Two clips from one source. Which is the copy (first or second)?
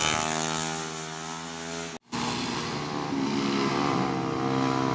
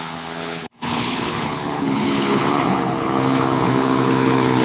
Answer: second